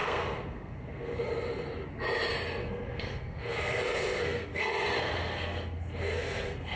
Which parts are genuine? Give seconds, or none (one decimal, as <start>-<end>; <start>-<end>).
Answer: 1.2-2.6